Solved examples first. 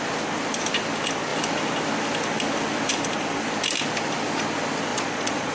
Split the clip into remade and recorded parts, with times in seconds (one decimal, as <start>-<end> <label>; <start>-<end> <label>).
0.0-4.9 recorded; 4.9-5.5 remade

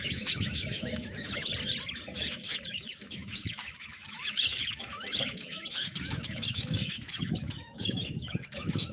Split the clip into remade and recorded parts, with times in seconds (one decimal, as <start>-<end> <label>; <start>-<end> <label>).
0.0-1.5 remade; 1.5-2.2 recorded; 2.2-8.9 remade

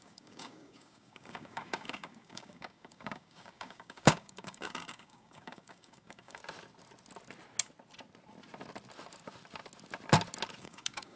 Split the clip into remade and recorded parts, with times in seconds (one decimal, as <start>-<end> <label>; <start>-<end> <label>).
0.0-6.4 remade; 6.4-10.6 recorded; 10.6-11.2 remade